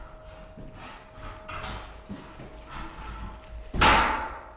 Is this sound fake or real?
real